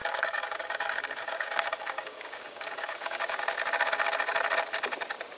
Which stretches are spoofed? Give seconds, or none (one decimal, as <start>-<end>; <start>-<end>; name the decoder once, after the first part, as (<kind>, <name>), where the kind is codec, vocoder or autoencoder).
0.0-3.2 (codec, DAC)